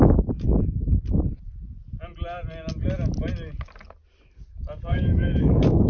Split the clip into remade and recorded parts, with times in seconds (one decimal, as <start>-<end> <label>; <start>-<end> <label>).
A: 0.0-4.9 recorded; 4.9-5.9 remade